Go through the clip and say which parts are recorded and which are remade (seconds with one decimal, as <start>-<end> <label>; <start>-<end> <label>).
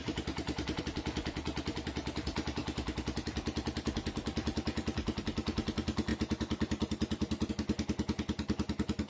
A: 0.0-0.8 remade; 0.8-6.1 recorded; 6.1-7.5 remade; 7.5-9.1 recorded